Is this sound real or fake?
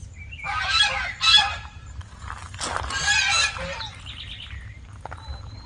real